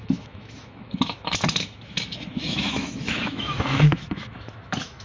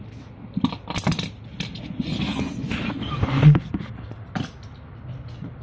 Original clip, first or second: second